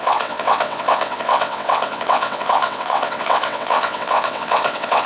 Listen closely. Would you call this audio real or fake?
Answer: fake